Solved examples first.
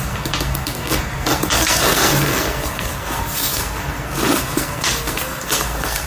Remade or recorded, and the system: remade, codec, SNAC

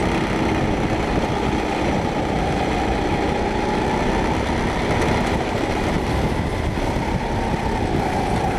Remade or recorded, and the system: recorded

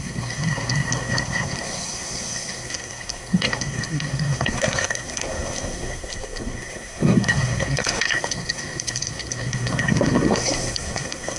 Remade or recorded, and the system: remade, codec, SNAC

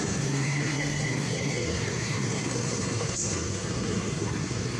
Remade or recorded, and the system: remade, codec, SNAC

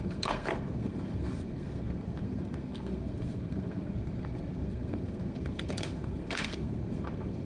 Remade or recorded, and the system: remade, codec, SNAC